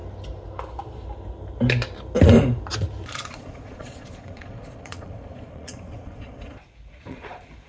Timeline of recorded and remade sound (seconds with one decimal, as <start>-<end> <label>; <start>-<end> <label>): 0.0-3.1 recorded; 3.1-7.7 remade